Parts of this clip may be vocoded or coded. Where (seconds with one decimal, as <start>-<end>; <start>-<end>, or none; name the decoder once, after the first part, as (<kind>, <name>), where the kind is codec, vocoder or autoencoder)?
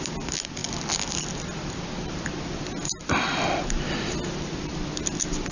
none